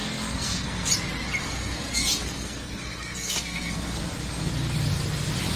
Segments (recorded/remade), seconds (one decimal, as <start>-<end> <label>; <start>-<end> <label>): 0.0-0.9 remade; 0.9-1.4 recorded; 1.4-4.5 remade; 4.5-5.6 recorded